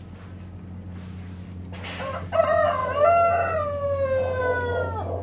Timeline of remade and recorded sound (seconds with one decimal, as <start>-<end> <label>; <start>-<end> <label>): 0.0-5.2 recorded